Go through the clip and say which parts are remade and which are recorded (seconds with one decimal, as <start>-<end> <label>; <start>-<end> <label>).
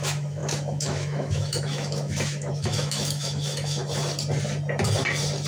0.0-3.8 remade; 3.8-5.5 recorded